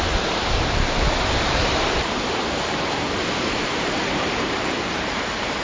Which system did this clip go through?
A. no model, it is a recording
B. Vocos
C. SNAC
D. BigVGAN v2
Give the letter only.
D